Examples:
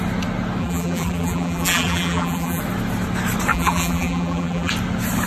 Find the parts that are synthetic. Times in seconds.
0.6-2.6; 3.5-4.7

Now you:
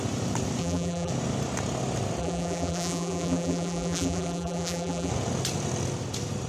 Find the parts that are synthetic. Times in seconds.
0.6-1.1; 2.2-5.1